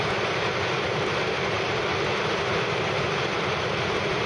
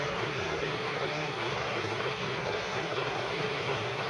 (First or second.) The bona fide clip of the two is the first